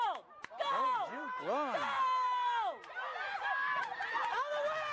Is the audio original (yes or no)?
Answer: yes